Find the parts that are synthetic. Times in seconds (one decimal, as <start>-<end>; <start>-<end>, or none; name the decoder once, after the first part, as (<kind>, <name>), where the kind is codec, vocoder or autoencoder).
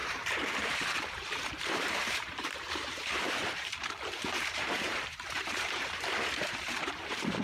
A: 0.0-7.4 (vocoder, BigVGAN v2)